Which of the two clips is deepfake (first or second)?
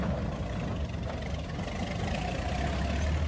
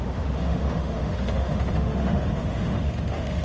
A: second